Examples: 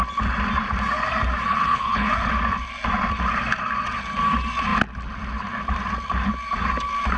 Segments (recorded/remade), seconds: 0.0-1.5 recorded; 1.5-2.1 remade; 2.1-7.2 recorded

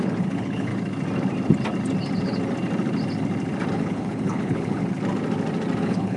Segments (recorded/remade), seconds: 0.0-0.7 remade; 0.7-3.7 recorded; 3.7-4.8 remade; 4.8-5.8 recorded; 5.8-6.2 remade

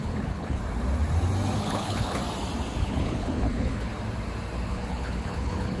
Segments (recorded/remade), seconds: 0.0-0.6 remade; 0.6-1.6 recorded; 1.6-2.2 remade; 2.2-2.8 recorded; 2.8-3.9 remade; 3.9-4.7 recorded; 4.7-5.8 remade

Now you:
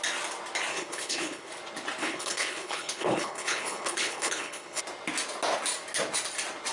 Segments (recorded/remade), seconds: 0.0-0.7 recorded; 0.7-1.5 remade; 1.5-2.0 recorded; 2.0-4.8 remade; 4.8-6.7 recorded